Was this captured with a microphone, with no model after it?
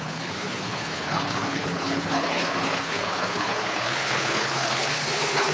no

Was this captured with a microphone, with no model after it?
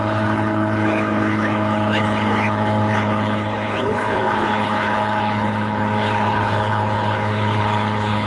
no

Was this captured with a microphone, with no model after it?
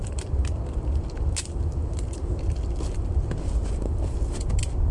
yes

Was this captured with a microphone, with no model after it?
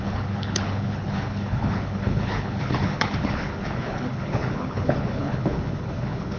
no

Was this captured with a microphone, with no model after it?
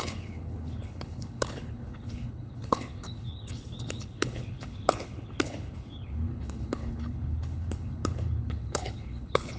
no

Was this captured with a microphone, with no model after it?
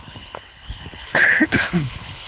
no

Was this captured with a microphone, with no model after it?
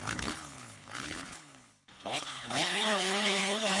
no